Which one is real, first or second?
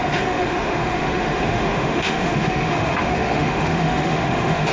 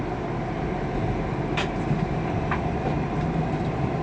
second